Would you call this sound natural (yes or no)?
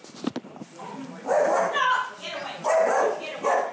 yes